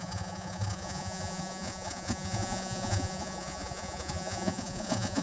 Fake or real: fake